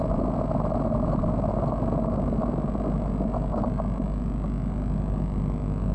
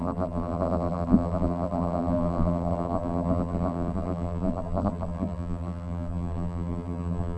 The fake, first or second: second